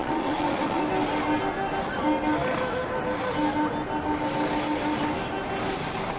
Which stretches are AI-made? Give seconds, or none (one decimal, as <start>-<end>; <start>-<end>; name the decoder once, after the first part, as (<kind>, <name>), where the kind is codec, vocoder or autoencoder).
0.0-0.8 (vocoder, Vocos)